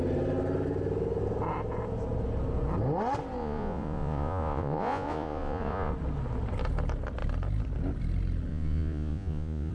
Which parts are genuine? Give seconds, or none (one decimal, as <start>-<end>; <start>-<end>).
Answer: 0.0-3.4; 5.9-8.5